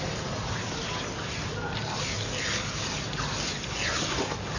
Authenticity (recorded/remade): recorded